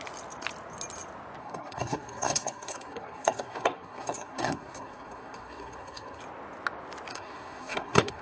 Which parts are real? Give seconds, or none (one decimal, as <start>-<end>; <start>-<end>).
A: 0.0-1.4; 6.2-7.1